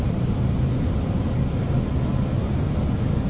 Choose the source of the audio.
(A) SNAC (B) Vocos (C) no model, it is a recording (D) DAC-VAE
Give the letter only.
C